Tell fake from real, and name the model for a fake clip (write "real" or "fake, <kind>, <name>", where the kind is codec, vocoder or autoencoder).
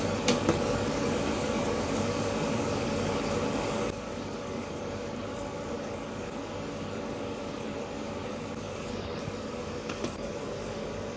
fake, codec, DAC